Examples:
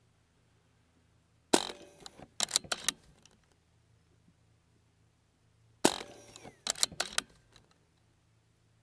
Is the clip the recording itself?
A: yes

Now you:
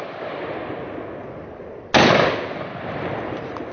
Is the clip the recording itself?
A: yes